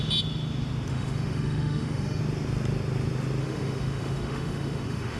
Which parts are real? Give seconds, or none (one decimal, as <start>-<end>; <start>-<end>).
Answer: 0.0-0.9; 2.2-3.4